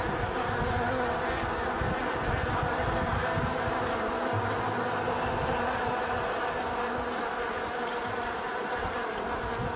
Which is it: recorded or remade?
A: recorded